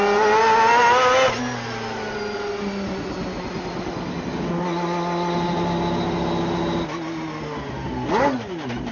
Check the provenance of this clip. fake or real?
real